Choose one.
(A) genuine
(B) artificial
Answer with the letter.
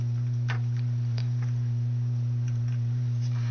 B